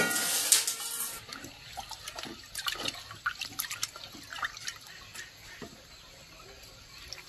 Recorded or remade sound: recorded